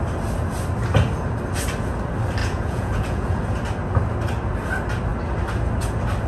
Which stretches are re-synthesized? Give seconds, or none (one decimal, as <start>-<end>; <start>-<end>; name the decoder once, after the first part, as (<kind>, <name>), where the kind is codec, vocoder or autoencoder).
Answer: 2.4-3.4 (vocoder, Vocos)